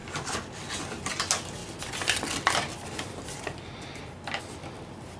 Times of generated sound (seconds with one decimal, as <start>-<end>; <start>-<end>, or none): 1.6-4.4